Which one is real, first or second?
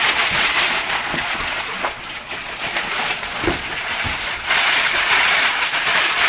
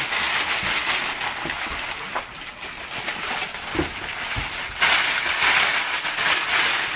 second